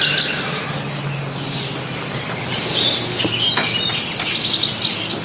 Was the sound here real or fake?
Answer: real